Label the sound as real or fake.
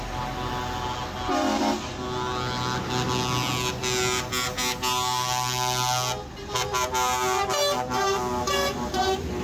real